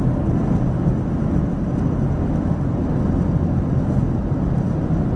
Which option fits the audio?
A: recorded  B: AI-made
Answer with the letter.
A